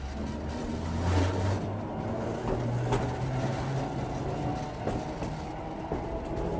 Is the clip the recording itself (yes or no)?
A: yes